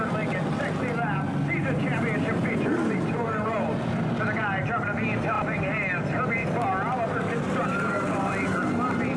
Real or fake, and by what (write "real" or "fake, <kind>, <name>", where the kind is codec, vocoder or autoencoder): real